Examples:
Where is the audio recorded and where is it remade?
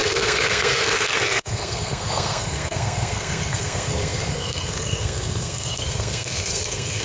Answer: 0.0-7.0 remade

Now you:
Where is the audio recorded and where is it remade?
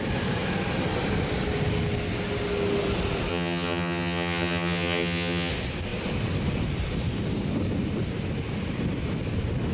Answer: 0.0-3.3 recorded; 3.3-5.5 remade; 5.5-9.7 recorded